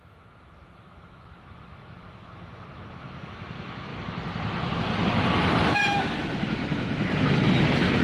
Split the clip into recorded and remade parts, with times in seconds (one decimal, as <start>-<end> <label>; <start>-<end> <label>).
0.0-3.9 remade; 3.9-5.7 recorded; 5.7-6.6 remade; 6.6-7.6 recorded; 7.6-8.0 remade